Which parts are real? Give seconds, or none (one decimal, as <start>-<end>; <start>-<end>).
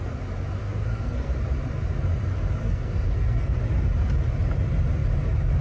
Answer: 0.0-0.6; 1.3-2.6; 3.6-5.6